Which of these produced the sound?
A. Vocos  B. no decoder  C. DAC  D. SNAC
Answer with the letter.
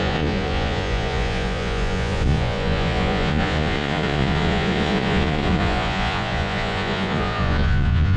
A